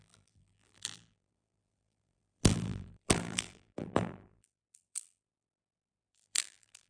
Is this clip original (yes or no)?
no